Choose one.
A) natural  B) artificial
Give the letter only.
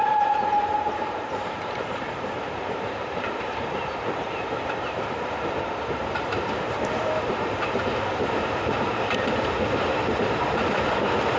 B